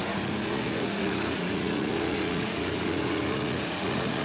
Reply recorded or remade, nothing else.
remade